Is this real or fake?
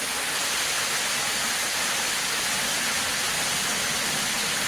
real